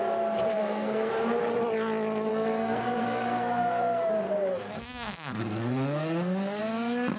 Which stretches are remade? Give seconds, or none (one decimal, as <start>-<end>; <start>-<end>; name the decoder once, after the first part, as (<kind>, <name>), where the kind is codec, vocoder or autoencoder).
0.5-1.1 (codec, SNAC); 2.3-4.1; 4.5-6.6